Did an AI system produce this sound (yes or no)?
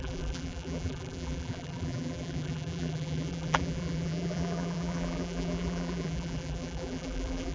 yes